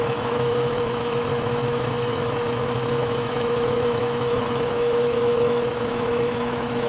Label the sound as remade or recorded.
remade